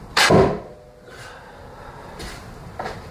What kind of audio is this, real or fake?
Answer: real